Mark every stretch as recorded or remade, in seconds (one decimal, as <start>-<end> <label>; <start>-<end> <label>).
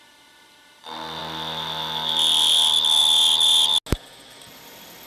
0.0-5.1 recorded